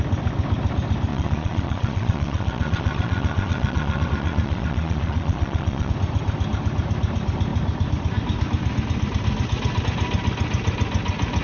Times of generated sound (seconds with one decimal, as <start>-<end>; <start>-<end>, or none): 1.1-5.9